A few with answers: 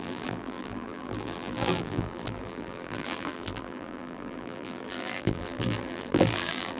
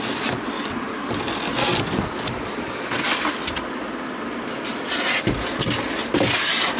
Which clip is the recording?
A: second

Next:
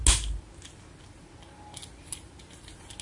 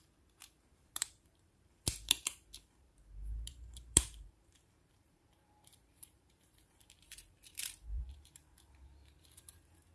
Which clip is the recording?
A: first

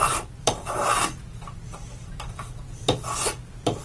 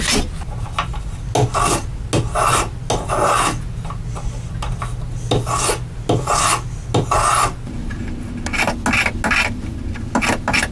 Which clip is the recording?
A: second